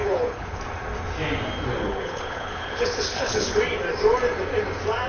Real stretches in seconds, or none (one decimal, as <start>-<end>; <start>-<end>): 0.6-1.8; 3.6-5.1

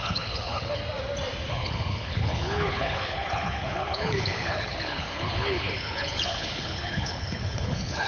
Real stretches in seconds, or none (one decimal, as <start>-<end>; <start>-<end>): 0.8-1.5

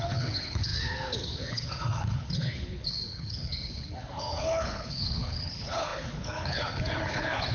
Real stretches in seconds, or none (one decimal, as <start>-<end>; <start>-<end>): none

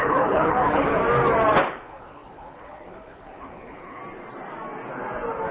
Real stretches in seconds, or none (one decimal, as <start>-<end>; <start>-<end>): 1.0-1.7; 4.0-5.5

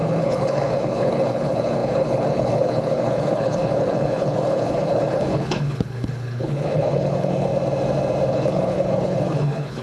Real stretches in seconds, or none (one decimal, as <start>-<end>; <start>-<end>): 7.5-8.3

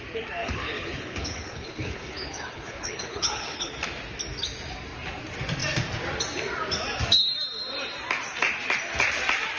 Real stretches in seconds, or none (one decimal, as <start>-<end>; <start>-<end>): 0.0-0.4; 3.7-9.6

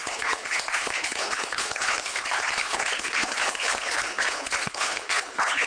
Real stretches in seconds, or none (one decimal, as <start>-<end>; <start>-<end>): none